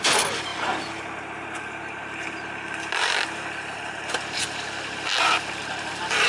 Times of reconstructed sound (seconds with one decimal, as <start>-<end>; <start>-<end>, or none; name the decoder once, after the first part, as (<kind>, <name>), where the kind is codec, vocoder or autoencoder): none